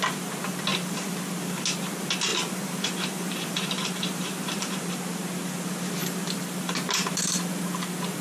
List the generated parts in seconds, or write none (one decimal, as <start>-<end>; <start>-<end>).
2.3-4.9